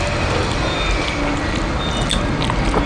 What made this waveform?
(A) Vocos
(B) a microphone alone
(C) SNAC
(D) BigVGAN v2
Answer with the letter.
B